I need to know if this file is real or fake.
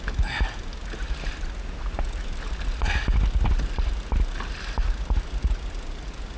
real